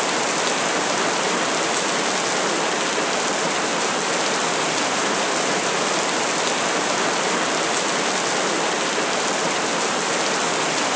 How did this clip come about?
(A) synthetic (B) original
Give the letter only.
B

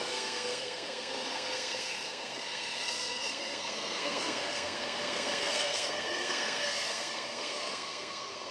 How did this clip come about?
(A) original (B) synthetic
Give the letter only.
B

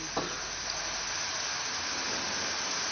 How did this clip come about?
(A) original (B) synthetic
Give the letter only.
A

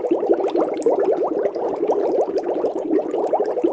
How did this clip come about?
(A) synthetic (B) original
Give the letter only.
B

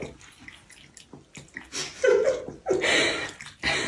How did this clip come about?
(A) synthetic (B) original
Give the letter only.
B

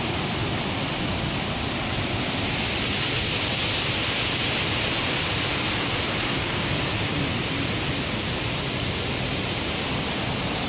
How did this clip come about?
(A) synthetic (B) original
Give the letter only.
A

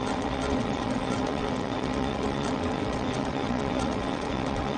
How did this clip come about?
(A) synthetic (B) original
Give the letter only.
A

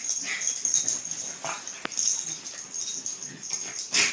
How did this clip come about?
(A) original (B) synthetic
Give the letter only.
A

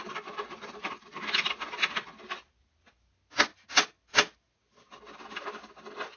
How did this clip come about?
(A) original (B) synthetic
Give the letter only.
A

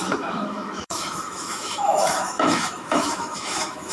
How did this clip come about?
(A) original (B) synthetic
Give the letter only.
B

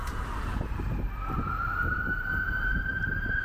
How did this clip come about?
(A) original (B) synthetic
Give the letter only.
B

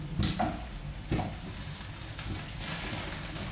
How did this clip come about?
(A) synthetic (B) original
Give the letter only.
B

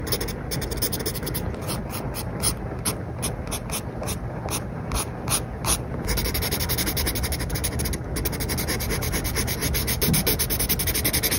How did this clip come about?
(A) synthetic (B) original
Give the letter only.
B